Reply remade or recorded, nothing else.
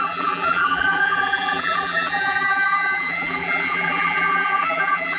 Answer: remade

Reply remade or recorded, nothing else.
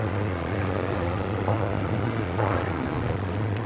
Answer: remade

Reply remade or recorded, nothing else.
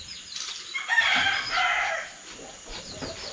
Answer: recorded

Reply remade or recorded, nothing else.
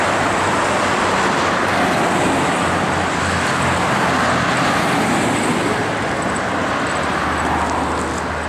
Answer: recorded